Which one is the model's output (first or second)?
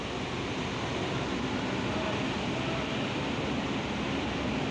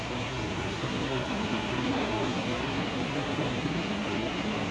second